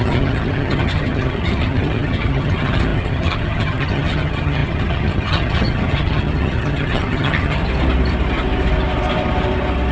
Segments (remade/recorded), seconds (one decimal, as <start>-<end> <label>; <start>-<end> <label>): 0.0-7.6 remade; 7.6-9.9 recorded